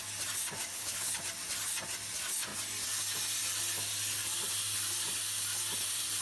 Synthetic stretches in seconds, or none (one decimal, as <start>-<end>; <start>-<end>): 0.7-1.2